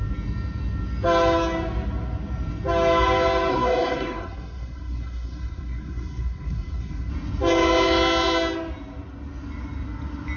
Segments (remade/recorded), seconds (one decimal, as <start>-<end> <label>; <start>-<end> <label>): 0.0-3.5 recorded; 3.5-7.1 remade; 7.1-10.4 recorded